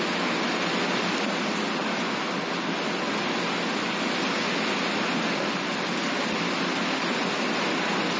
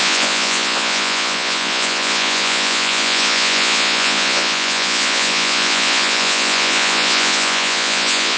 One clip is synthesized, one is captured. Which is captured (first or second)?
first